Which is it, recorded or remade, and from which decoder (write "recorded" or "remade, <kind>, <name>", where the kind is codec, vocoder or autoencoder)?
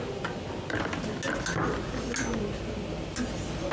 recorded